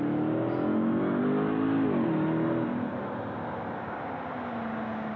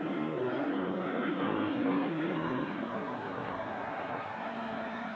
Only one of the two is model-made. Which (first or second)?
second